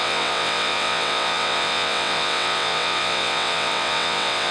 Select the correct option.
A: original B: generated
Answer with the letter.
B